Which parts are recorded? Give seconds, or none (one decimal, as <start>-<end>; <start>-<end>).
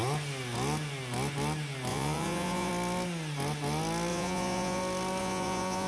0.0-1.9; 2.7-4.1; 4.8-5.2